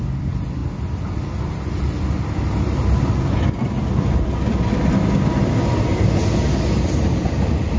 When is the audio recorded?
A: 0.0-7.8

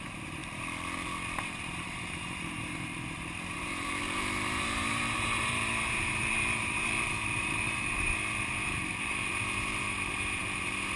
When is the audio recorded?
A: 0.4-1.4

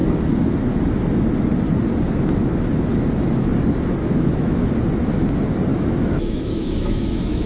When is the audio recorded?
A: 0.0-4.0; 4.7-5.7

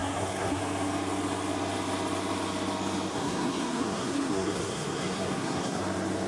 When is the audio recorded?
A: 0.6-3.1; 5.8-6.3